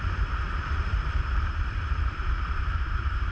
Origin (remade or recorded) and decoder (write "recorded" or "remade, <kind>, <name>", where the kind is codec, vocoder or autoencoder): remade, vocoder, BigVGAN v2